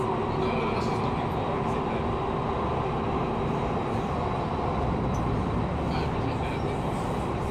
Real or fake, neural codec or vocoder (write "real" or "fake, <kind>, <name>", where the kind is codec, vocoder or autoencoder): real